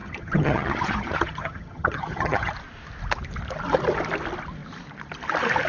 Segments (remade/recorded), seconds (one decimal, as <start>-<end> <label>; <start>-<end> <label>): 0.0-2.5 remade; 2.5-5.7 recorded